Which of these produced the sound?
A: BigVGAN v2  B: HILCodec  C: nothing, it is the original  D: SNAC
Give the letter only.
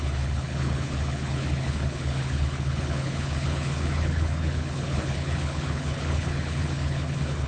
B